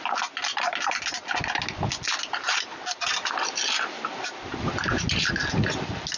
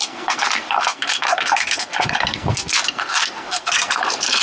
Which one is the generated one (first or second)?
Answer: second